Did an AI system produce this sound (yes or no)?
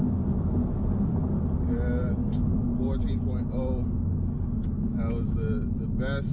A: no